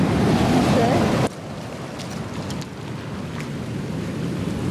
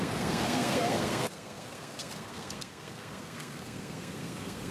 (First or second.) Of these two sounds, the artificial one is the second